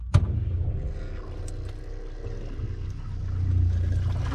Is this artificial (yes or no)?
no